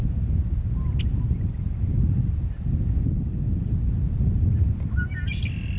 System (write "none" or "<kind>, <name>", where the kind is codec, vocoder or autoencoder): none